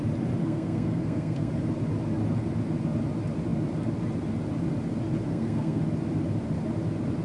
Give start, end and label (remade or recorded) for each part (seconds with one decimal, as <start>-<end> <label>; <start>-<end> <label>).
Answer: 0.0-0.4 recorded; 0.4-1.5 remade; 1.5-5.3 recorded; 5.3-5.8 remade; 5.8-7.2 recorded